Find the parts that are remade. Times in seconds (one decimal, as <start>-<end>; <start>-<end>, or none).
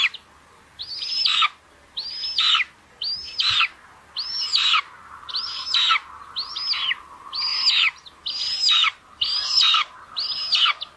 none